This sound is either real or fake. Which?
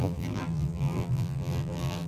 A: fake